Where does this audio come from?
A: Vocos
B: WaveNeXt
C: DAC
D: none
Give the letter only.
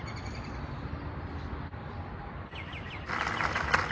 D